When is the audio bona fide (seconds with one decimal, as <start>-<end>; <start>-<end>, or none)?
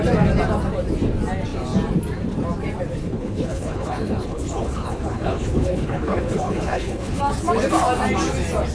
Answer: 0.0-3.0; 7.2-8.7